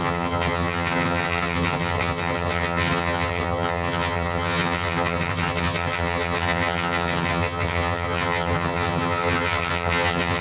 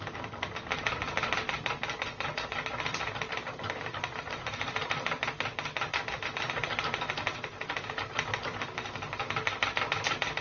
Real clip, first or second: second